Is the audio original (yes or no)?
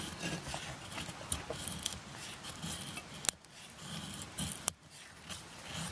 yes